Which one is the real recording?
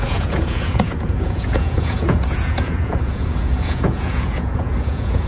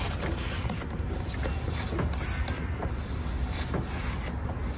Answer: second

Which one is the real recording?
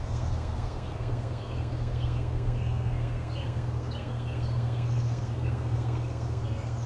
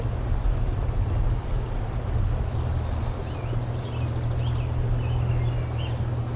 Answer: second